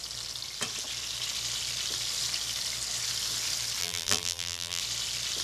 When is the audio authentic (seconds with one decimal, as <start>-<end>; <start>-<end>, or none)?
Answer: 0.0-3.8; 4.8-5.4